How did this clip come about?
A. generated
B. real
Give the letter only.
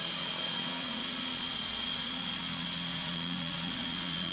A